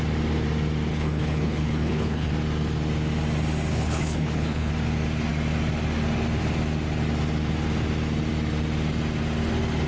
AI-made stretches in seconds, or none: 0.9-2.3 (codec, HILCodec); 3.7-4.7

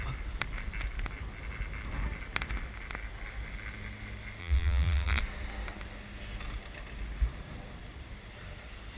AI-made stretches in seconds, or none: 4.4-5.2 (vocoder, BigVGAN v2)